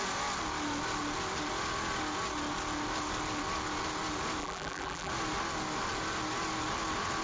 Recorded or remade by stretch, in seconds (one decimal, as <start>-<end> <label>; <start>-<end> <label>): 0.0-4.4 recorded; 4.4-5.1 remade; 5.1-7.2 recorded